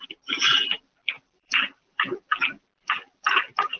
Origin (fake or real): fake